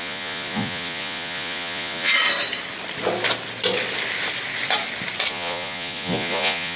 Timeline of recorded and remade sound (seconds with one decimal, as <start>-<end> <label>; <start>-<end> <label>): 0.0-2.1 remade; 2.1-5.3 recorded; 5.3-6.8 remade